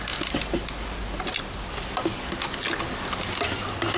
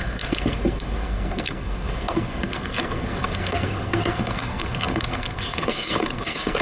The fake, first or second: second